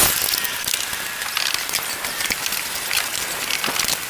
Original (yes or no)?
yes